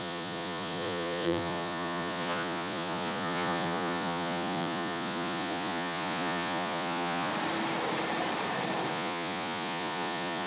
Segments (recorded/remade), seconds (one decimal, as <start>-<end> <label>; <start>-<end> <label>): 0.0-7.3 remade; 7.3-8.9 recorded; 8.9-10.5 remade

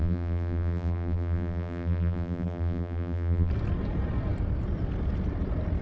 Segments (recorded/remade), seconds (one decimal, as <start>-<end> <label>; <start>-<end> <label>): 0.0-3.5 remade; 3.5-5.8 recorded

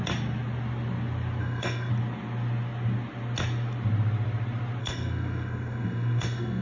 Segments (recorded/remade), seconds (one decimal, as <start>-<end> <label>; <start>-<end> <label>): 0.0-1.4 recorded; 1.4-1.9 remade; 1.9-4.8 recorded; 4.8-6.6 remade

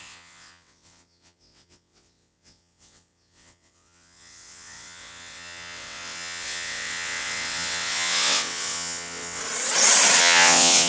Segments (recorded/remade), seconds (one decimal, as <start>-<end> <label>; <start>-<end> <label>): 0.0-9.4 remade; 9.4-10.2 recorded; 10.2-10.9 remade

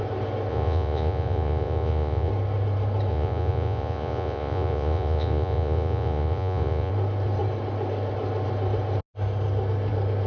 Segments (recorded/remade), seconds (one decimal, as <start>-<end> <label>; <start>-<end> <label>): 0.0-0.5 recorded; 0.5-2.3 remade; 2.3-3.1 recorded; 3.1-6.9 remade; 6.9-10.3 recorded

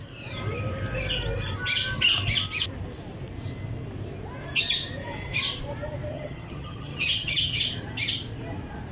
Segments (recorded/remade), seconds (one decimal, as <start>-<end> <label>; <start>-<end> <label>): 0.0-6.1 recorded; 6.1-7.6 remade; 7.6-8.9 recorded

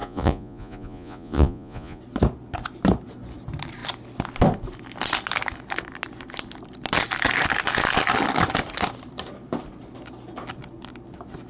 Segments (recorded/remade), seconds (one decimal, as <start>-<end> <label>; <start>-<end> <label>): 0.0-2.0 remade; 2.0-11.5 recorded

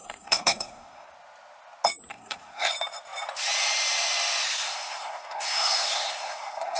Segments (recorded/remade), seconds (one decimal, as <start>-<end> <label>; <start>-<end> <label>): 0.0-1.1 remade; 1.1-2.1 recorded; 2.1-2.7 remade; 2.7-4.5 recorded; 4.5-6.8 remade